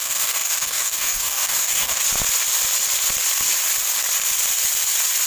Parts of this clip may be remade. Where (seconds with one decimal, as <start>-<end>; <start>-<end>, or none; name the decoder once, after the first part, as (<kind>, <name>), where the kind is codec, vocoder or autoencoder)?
0.0-2.0 (codec, DAC)